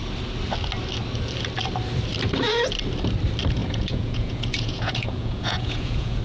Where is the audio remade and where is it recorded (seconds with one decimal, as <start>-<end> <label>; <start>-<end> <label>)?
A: 0.0-3.6 recorded; 3.6-6.2 remade